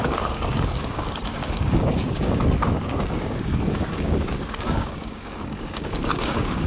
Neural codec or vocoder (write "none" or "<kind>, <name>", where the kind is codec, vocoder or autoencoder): codec, DAC